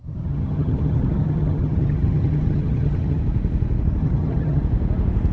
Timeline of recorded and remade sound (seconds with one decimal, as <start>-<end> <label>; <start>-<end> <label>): 0.0-3.2 remade; 3.2-4.0 recorded; 4.0-4.6 remade; 4.6-5.3 recorded